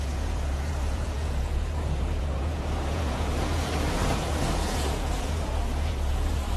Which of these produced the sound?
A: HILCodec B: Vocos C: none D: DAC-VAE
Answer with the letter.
B